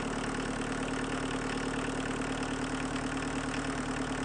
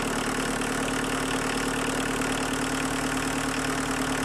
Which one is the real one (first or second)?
second